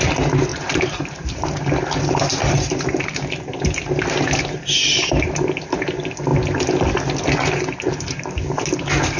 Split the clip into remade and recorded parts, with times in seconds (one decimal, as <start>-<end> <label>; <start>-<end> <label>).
0.0-0.5 recorded; 0.5-1.6 remade; 1.6-2.3 recorded; 2.3-3.0 remade; 3.0-9.2 recorded